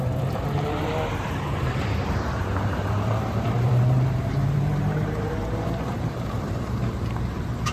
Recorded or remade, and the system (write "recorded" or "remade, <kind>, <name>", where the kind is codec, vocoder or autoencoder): remade, vocoder, BigVGAN v2